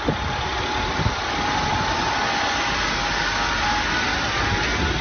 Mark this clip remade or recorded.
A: recorded